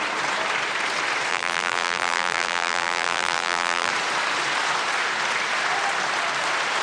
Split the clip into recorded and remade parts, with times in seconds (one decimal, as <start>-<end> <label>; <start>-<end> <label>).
0.0-1.3 recorded; 1.3-3.9 remade; 3.9-6.8 recorded